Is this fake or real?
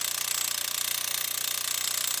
real